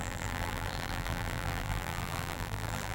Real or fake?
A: fake